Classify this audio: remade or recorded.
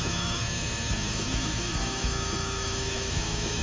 remade